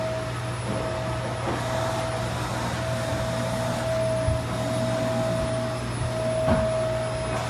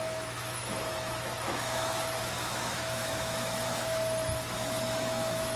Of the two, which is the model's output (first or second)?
second